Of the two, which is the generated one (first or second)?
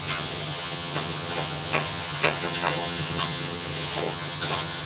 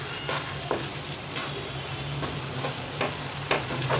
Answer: first